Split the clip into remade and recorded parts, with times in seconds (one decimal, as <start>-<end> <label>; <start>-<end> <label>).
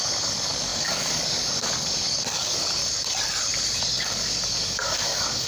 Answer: 0.0-2.8 remade; 2.8-3.8 recorded; 3.8-5.5 remade